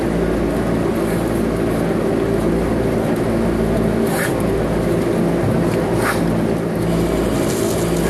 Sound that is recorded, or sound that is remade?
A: recorded